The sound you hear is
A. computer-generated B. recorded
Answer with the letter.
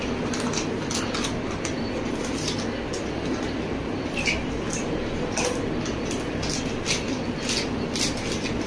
B